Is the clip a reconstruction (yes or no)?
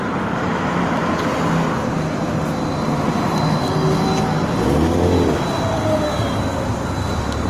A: no